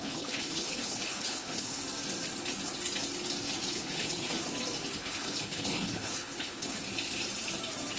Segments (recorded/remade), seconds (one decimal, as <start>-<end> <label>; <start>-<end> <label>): 0.0-1.8 remade; 1.8-3.7 recorded; 3.7-4.4 remade; 4.4-5.0 recorded; 5.0-6.8 remade; 6.8-8.0 recorded

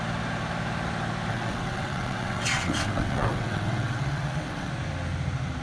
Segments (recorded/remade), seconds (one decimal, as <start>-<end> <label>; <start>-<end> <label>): 0.0-1.3 recorded; 1.3-4.7 remade; 4.7-5.6 recorded